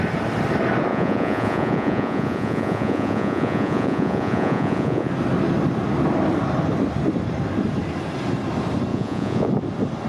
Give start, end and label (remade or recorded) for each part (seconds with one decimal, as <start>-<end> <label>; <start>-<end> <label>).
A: 0.0-0.9 recorded; 0.9-5.1 remade; 5.1-8.9 recorded; 8.9-9.5 remade; 9.5-10.1 recorded